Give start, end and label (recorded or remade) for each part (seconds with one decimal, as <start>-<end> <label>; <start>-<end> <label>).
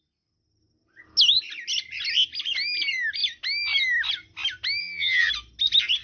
0.0-4.8 recorded; 4.8-5.3 remade; 5.3-6.0 recorded